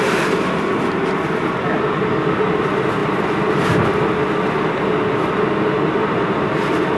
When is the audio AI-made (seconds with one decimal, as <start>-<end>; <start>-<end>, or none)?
6.0-7.0